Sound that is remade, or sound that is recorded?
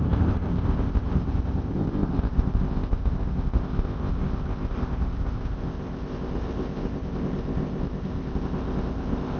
remade